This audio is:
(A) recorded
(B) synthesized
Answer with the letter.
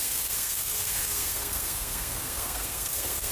B